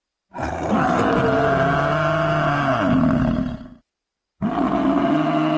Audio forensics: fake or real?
real